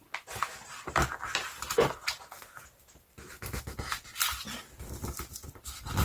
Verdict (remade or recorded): recorded